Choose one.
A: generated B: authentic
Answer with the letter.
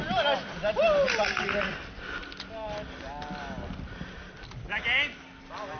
B